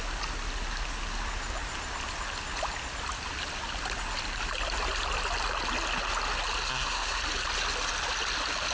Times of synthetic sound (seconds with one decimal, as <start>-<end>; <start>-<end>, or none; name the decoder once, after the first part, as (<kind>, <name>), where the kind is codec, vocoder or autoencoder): 6.7-7.2 (codec, SNAC)